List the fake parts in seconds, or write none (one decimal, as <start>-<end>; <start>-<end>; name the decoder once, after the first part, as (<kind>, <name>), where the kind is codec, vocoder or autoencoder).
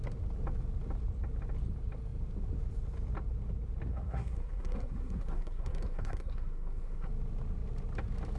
3.9-7.1 (codec, SNAC)